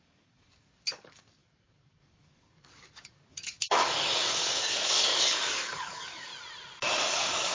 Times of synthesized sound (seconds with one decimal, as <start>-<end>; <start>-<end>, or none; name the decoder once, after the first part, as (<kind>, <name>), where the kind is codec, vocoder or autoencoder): 0.0-6.3 (codec, DAC); 7.1-7.5